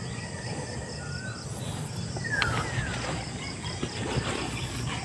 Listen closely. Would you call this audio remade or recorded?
recorded